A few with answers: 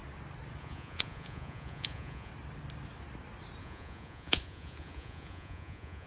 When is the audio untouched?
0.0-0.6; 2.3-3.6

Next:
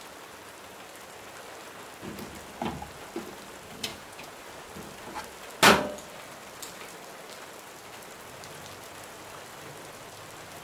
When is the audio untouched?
0.0-3.9; 4.4-10.6

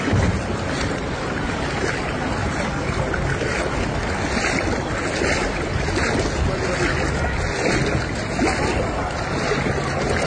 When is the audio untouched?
0.0-2.4; 3.1-9.0

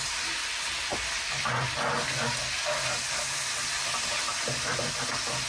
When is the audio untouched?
0.0-5.5